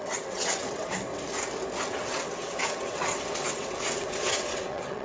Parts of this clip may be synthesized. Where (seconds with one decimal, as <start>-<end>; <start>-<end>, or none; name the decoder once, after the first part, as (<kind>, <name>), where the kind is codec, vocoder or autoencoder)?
0.0-1.1 (vocoder, WaveNeXt); 1.9-5.0